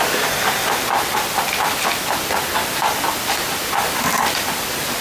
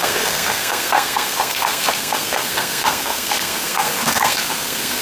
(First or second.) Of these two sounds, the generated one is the second